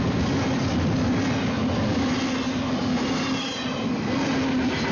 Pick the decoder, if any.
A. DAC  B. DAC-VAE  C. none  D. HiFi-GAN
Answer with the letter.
C